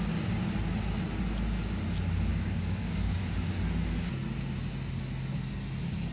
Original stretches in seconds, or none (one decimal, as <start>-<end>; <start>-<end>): 0.0-2.3; 3.2-6.1